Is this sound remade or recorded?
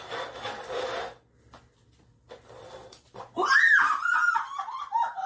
recorded